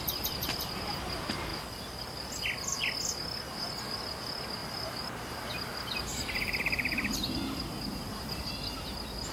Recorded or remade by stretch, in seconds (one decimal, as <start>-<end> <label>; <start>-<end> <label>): 0.0-4.6 recorded; 4.6-8.5 remade; 8.5-9.3 recorded